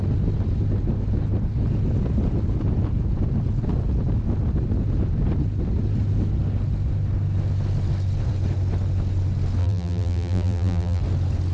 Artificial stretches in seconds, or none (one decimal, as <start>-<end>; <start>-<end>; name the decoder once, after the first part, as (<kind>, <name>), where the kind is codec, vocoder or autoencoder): 9.6-11.0 (vocoder, BigVGAN v2)